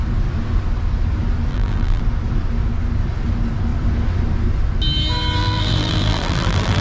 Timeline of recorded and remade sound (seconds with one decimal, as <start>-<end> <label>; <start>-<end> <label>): 0.0-1.5 recorded; 1.5-2.0 remade; 2.0-5.4 recorded; 5.4-6.8 remade